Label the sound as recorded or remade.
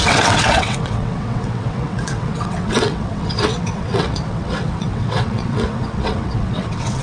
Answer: remade